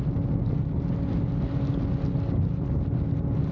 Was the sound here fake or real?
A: real